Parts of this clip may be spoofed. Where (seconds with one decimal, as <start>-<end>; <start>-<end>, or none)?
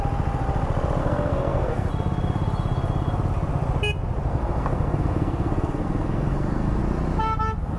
1.0-1.9; 4.3-6.8